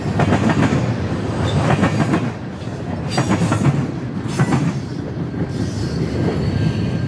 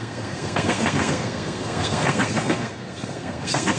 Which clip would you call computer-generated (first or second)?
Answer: second